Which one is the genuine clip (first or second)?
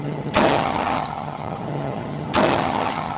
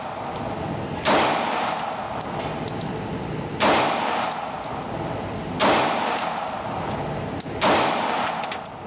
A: second